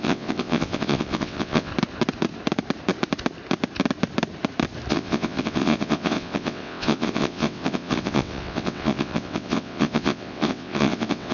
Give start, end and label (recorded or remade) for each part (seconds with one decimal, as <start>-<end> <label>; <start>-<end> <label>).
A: 0.0-1.7 remade; 1.7-4.9 recorded; 4.9-11.3 remade